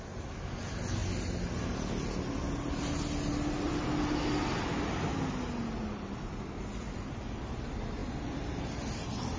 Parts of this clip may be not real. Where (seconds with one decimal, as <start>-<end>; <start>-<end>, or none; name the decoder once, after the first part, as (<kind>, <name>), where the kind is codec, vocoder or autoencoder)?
none